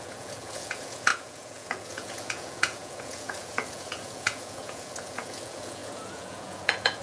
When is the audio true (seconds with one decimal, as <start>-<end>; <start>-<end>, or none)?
none